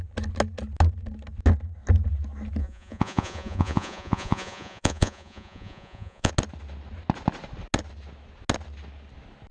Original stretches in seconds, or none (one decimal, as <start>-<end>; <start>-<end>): 0.0-2.6; 6.3-9.5